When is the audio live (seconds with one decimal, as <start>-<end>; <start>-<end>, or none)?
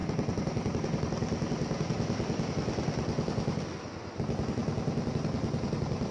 0.0-6.1